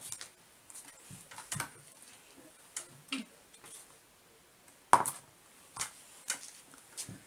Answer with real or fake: real